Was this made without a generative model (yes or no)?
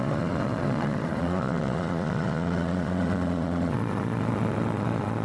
no